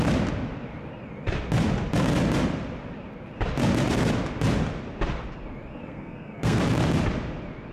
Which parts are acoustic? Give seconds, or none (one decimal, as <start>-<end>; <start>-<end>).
0.0-5.8; 6.6-7.7